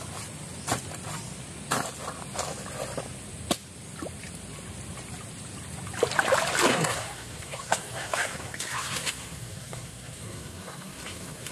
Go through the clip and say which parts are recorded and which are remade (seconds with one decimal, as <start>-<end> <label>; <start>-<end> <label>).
0.0-6.7 recorded; 6.7-11.5 remade